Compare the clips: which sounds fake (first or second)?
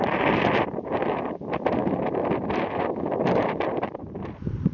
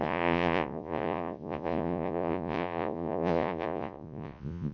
second